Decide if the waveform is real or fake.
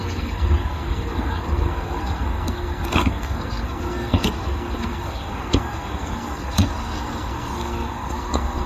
fake